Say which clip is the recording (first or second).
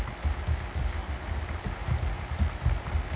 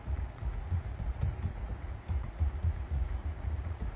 first